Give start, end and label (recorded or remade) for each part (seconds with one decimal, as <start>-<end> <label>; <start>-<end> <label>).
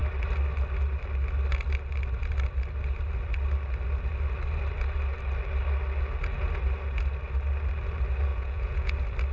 0.0-8.3 recorded; 8.3-8.9 remade; 8.9-9.3 recorded